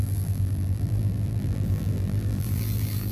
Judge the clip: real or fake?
fake